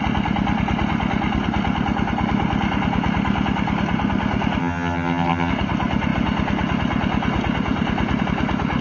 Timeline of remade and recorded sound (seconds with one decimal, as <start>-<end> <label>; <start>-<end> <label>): 0.0-4.6 recorded; 4.6-5.5 remade; 5.5-8.8 recorded